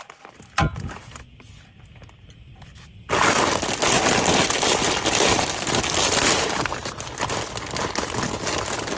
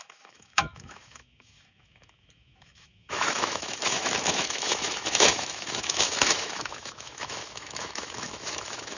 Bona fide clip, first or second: first